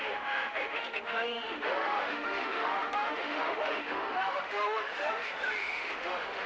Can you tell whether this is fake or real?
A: fake